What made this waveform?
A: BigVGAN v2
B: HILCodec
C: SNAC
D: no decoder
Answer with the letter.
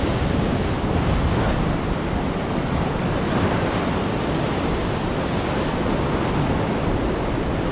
D